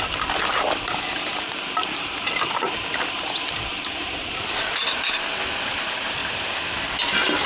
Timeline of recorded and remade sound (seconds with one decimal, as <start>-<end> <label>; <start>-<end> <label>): 0.0-3.7 recorded; 3.7-4.3 remade; 4.3-6.2 recorded; 6.2-6.8 remade; 6.8-7.5 recorded